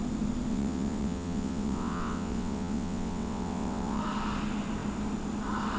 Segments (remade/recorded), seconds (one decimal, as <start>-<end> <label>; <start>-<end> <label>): 0.0-0.5 recorded; 0.5-4.0 remade; 4.0-5.8 recorded